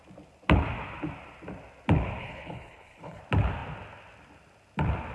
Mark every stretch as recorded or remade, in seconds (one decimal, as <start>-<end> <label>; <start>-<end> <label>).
0.0-2.2 recorded; 2.2-3.2 remade; 3.2-5.1 recorded